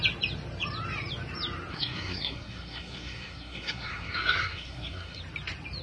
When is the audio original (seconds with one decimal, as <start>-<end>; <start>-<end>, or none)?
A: 0.0-1.7; 5.2-5.8